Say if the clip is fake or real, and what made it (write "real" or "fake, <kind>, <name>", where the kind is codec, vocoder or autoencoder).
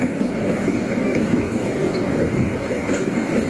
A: fake, codec, DAC